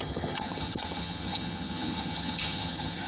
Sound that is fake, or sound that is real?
fake